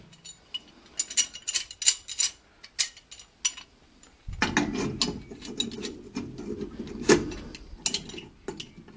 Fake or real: real